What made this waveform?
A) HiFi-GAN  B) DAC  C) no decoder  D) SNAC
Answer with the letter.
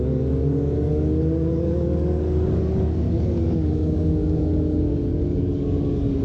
B